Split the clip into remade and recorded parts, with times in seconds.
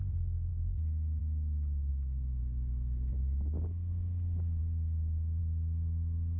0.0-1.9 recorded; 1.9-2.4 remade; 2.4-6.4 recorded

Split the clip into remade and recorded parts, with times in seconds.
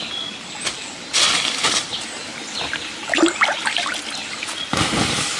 0.0-0.7 recorded; 0.7-3.9 remade; 3.9-5.4 recorded